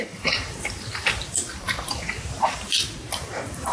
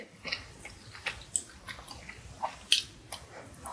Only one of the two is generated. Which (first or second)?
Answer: first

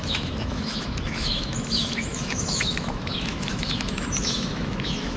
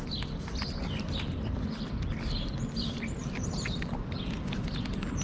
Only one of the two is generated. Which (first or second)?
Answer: first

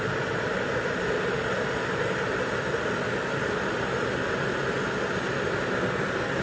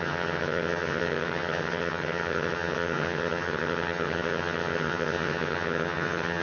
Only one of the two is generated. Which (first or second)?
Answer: second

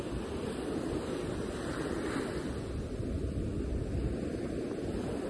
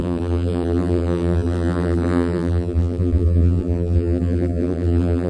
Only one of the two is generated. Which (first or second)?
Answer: second